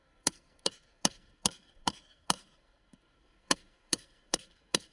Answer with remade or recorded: remade